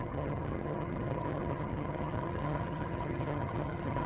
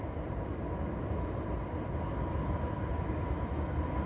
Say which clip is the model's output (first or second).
first